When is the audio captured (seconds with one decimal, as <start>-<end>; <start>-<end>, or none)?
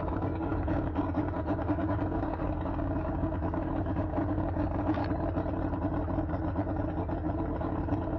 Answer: 5.0-7.5